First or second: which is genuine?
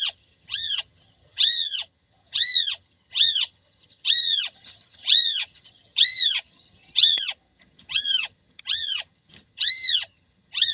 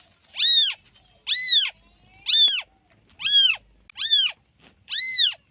second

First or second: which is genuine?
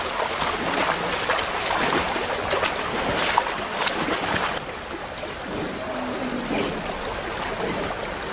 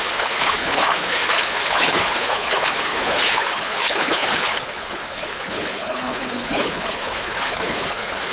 first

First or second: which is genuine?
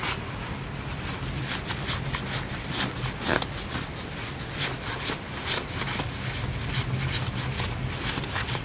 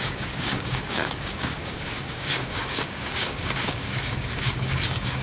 first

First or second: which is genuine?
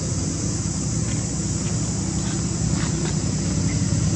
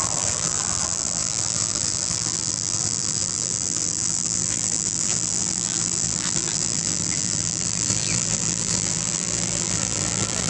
first